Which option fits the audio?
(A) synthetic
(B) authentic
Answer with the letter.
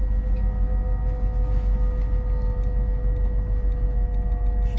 B